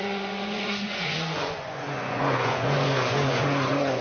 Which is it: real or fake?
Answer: fake